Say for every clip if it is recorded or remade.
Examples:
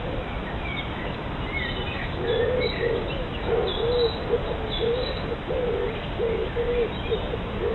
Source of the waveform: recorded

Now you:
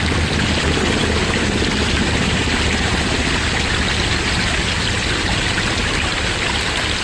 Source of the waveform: recorded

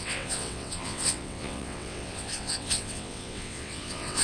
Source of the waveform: remade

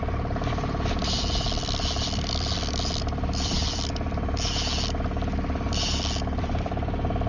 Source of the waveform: remade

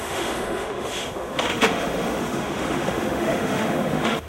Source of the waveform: remade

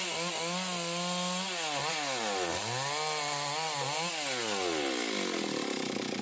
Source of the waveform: recorded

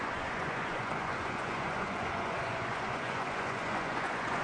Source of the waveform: remade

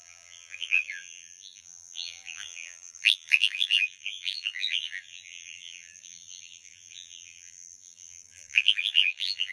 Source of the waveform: remade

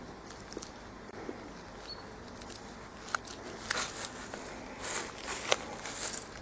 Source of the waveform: recorded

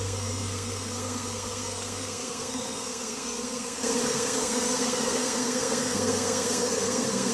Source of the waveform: remade